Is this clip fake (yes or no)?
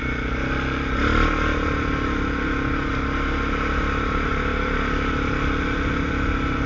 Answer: no